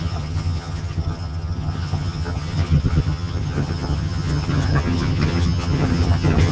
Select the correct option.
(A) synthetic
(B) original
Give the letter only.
A